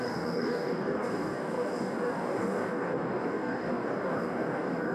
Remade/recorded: remade